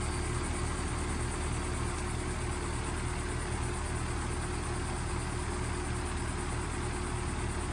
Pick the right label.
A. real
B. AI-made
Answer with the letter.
A